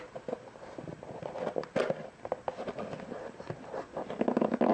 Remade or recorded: recorded